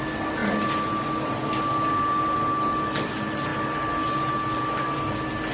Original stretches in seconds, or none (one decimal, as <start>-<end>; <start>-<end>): 0.0-5.5